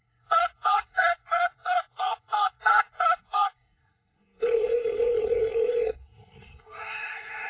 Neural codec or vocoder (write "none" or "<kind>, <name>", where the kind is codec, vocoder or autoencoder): codec, SNAC